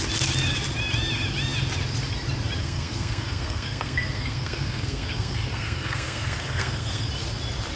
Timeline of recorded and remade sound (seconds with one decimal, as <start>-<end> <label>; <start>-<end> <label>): 0.0-2.6 recorded; 2.6-7.1 remade; 7.1-7.8 recorded